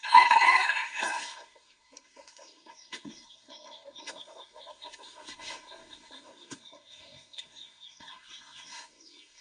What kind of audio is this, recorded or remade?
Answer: remade